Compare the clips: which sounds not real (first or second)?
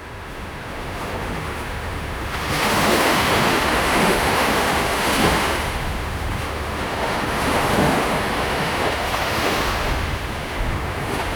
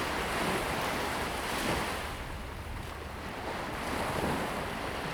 first